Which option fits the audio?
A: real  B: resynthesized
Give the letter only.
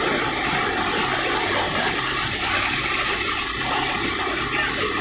A